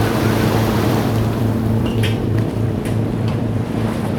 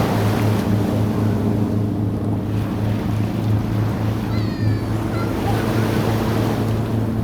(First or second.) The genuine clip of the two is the second